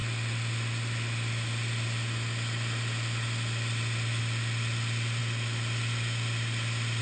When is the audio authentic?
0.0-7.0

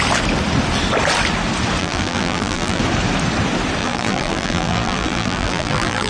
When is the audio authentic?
0.0-1.8; 2.8-3.8

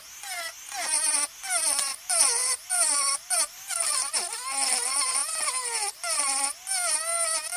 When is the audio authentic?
0.0-2.4; 4.1-7.6

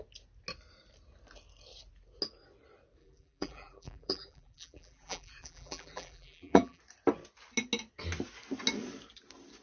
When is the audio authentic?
0.0-3.0; 6.8-9.6

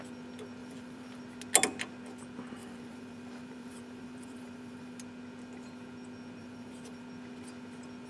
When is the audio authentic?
0.0-0.6; 1.2-2.6; 5.0-6.4; 7.0-8.1

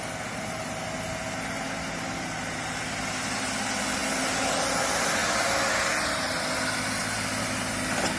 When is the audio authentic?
0.0-8.2

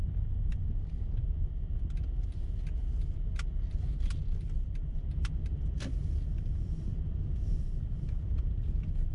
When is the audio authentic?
0.0-4.8; 7.7-9.1